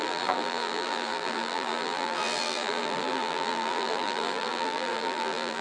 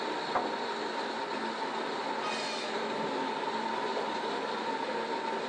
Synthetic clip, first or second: first